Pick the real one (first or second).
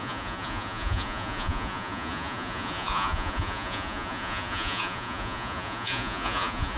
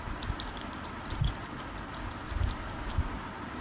second